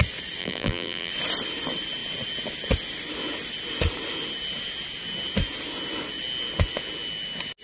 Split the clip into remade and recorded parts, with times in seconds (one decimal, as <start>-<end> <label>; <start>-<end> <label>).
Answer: 0.0-0.4 recorded; 0.4-1.1 remade; 1.1-7.6 recorded

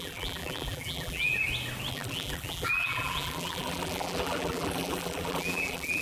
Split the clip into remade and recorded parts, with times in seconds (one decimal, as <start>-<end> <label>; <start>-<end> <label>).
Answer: 0.0-1.3 remade; 1.3-1.9 recorded; 1.9-6.0 remade

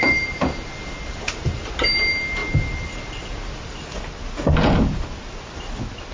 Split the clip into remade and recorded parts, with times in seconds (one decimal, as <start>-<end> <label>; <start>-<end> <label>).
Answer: 0.0-6.1 recorded

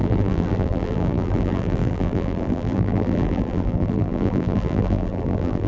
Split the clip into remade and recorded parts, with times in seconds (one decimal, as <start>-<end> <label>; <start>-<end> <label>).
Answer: 0.0-5.7 remade

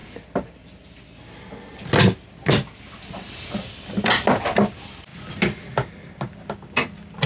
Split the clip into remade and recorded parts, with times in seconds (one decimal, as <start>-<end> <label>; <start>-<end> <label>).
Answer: 0.0-7.3 recorded

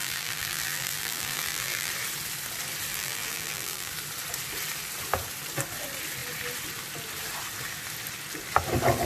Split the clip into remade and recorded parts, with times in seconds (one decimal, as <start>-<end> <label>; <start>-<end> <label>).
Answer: 0.0-1.9 remade; 1.9-2.9 recorded; 2.9-3.9 remade; 3.9-9.1 recorded

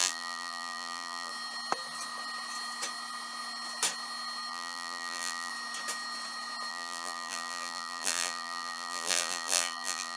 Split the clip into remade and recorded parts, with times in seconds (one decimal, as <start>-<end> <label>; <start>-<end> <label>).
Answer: 0.0-1.3 remade; 1.3-4.5 recorded; 4.5-5.5 remade; 5.5-6.7 recorded; 6.7-10.2 remade